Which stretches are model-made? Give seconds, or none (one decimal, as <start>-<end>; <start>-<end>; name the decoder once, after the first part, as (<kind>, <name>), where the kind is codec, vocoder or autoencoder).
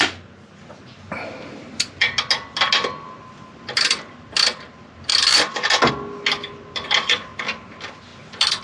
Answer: 5.1-5.9 (vocoder, BigVGAN v2)